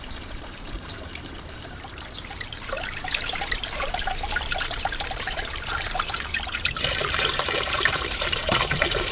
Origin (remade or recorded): remade